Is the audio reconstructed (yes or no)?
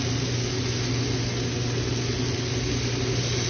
no